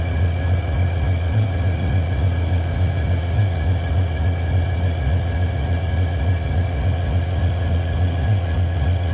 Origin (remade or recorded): remade